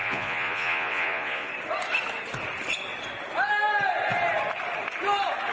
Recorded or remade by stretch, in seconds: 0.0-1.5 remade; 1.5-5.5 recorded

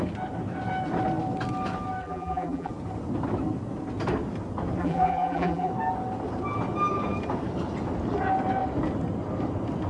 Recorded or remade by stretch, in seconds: 0.0-2.0 recorded; 2.0-2.7 remade; 2.7-4.8 recorded; 4.8-5.7 remade; 5.7-9.9 recorded

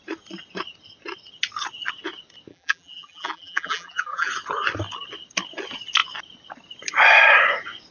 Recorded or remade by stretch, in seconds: 0.0-2.5 recorded; 2.5-4.3 remade; 4.3-7.9 recorded

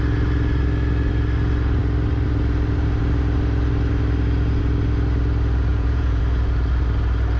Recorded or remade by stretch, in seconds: 0.0-5.7 recorded; 5.7-6.2 remade; 6.2-7.4 recorded

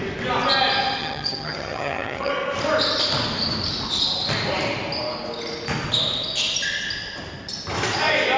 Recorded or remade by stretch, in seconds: 0.0-1.0 recorded; 1.0-2.3 remade; 2.3-8.4 recorded